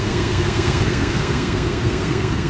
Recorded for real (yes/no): no